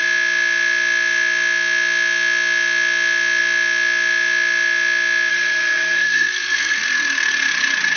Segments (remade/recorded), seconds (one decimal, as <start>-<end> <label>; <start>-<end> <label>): 0.0-5.3 recorded; 5.3-6.8 remade; 6.8-8.0 recorded

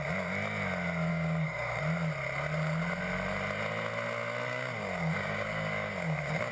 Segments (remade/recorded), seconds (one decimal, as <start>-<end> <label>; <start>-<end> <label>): 0.0-1.1 recorded; 1.1-1.8 remade; 1.8-4.5 recorded; 4.5-6.5 remade

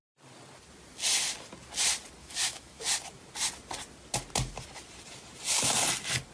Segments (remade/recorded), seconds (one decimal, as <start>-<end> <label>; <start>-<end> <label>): 0.0-2.2 recorded; 2.2-2.8 remade; 2.8-6.3 recorded